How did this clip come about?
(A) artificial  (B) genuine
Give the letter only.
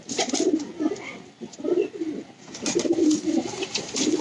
B